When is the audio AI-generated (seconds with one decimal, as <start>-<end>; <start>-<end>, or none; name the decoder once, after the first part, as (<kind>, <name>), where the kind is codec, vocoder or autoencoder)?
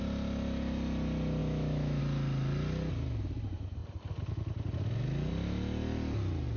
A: 1.4-2.0 (autoencoder, DAC-VAE)